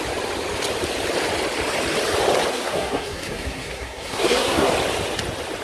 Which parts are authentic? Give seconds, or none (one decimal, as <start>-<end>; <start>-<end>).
0.0-2.5; 4.7-5.6